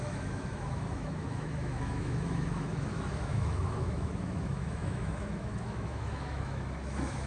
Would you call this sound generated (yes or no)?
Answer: yes